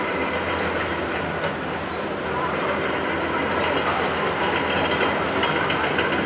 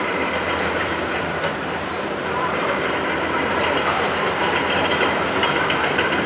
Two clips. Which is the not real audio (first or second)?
second